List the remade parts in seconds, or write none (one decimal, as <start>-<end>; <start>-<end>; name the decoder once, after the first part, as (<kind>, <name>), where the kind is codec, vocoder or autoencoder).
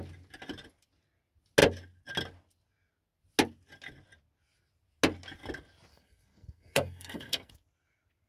5.9-7.5 (codec, SNAC)